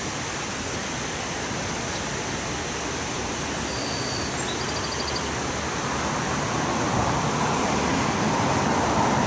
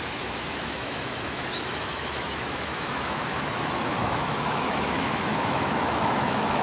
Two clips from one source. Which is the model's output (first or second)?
second